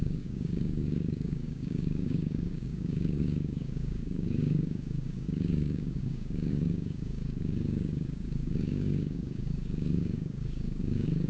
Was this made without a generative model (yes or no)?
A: no